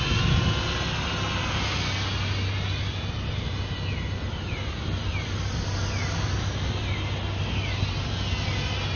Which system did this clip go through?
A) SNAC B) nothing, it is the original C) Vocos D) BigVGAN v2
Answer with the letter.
B